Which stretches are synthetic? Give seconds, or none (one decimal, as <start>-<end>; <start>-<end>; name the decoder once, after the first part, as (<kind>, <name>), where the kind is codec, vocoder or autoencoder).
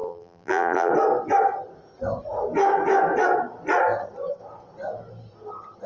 0.0-0.9 (vocoder, BigVGAN v2)